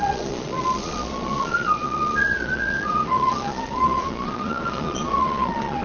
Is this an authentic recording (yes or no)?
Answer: no